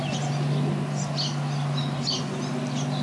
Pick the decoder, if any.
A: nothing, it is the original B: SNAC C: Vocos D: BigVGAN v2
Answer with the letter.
A